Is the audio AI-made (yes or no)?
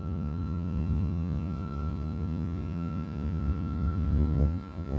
yes